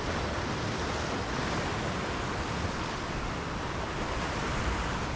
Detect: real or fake real